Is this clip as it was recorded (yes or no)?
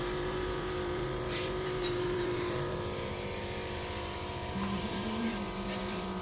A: no